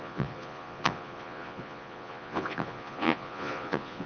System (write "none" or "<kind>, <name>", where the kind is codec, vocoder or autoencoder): vocoder, Vocos